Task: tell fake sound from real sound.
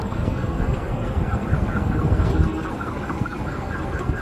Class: fake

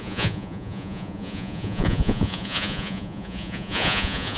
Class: fake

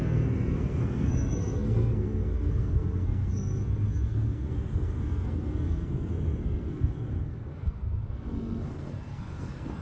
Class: fake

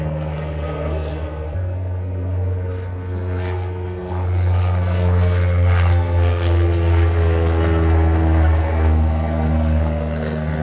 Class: fake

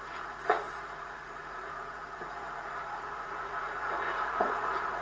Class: fake